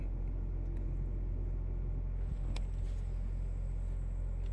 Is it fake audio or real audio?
real